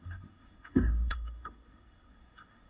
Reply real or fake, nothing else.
fake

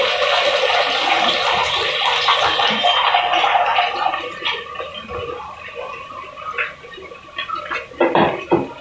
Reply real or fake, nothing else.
real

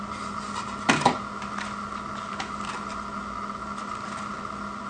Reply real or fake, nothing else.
real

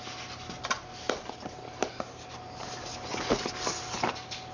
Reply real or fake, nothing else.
real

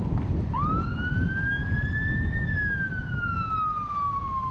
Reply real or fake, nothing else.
real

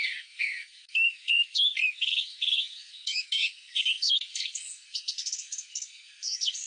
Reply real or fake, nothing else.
fake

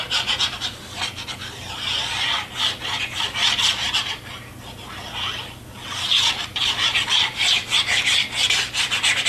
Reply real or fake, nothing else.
real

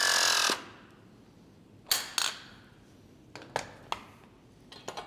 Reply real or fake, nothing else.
real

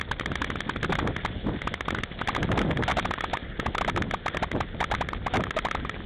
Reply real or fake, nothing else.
real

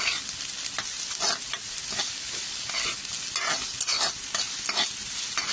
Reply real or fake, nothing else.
real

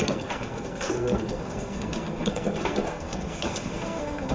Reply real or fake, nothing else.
fake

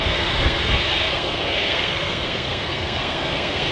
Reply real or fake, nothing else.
fake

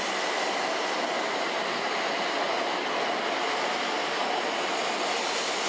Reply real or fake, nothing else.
real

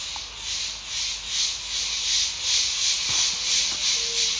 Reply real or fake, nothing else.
real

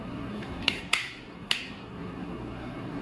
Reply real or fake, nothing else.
fake